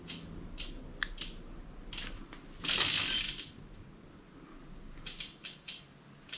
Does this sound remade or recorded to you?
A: recorded